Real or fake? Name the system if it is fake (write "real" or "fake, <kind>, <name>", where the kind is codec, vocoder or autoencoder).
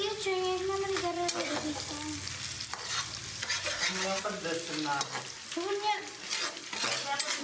real